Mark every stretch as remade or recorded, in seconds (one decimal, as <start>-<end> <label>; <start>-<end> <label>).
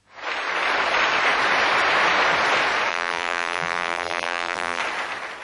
0.0-2.9 recorded; 2.9-4.8 remade; 4.8-5.4 recorded